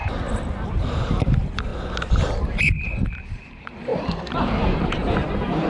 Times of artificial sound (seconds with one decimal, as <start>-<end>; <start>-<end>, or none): 0.7-1.7; 3.3-5.7